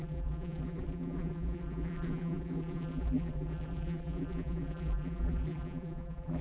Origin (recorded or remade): remade